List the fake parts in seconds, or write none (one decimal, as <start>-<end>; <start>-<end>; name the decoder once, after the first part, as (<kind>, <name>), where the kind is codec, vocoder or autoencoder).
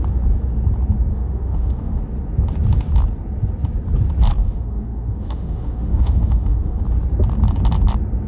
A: 1.1-2.0 (autoencoder, DAC-VAE); 4.4-6.8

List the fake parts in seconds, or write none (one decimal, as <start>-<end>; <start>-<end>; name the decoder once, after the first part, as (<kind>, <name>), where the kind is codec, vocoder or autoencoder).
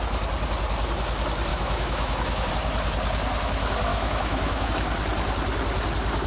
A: 1.5-2.5 (autoencoder, DAC-VAE); 3.9-4.7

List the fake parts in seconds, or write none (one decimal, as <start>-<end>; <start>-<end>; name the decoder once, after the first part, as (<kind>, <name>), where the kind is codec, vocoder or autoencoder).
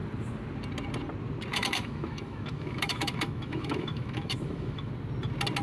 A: 1.5-4.9 (autoencoder, DAC-VAE)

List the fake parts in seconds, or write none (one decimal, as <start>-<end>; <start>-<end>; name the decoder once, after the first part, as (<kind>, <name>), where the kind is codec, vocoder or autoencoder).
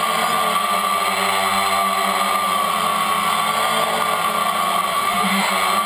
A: 4.9-5.5 (autoencoder, DAC-VAE)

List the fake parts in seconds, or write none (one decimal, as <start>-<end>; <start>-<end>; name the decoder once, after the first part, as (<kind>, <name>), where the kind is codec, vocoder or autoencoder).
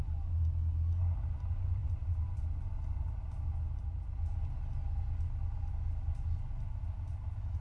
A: none